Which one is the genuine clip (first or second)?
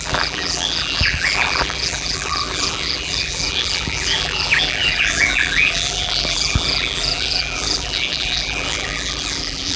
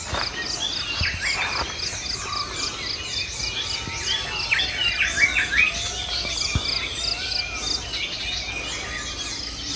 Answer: second